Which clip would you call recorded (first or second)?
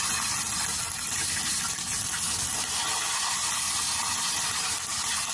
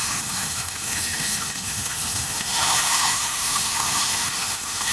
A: first